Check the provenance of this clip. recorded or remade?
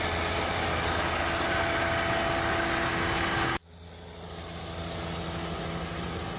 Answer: recorded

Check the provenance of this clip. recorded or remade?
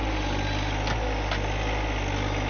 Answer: recorded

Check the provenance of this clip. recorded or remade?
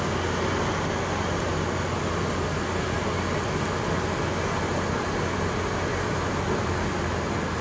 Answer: recorded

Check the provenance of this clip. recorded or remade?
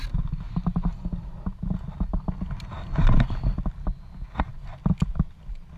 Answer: recorded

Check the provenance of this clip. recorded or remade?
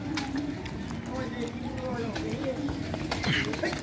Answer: recorded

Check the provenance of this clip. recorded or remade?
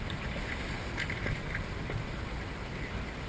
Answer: recorded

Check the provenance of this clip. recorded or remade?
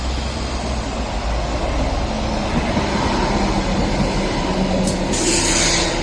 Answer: recorded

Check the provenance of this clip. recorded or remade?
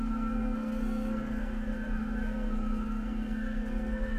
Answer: remade